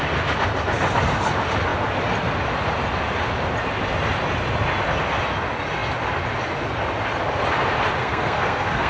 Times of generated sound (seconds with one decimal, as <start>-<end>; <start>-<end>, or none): 8.0-8.9